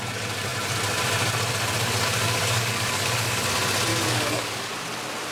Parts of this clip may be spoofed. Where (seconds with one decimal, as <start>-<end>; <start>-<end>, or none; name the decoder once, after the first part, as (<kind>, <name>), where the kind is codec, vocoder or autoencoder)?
2.2-3.4 (codec, DAC); 3.9-4.7